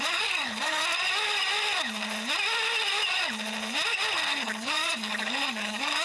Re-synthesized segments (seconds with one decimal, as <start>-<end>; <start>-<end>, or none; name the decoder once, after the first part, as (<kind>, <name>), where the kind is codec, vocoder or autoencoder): 0.0-0.8 (codec, DAC); 4.3-6.0